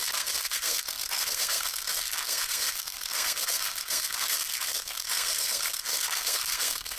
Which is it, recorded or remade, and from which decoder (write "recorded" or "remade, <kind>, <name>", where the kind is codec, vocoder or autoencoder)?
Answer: remade, codec, SNAC